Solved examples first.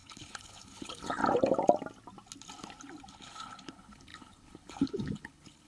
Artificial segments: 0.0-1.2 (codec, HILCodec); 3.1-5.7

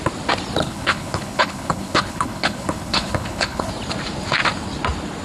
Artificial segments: 0.6-3.7 (codec, HILCodec)

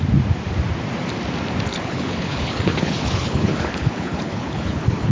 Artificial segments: 1.7-5.1 (codec, HILCodec)

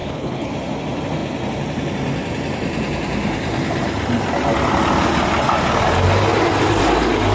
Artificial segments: 0.0-0.5 (codec, HILCodec)

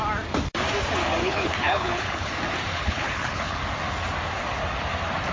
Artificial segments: 1.2-2.3 (codec, HILCodec); 2.7-3.6

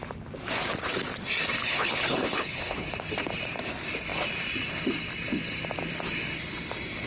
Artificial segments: 1.6-2.9 (codec, HILCodec)

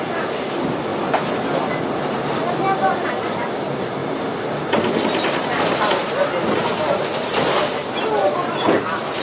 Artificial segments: none